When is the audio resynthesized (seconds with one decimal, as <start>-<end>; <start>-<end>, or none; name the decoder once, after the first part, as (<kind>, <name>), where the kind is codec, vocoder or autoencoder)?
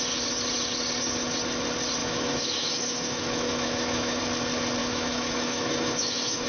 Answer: 2.0-4.2 (autoencoder, DAC-VAE); 4.8-6.5